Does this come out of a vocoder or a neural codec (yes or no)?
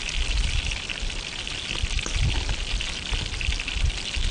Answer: no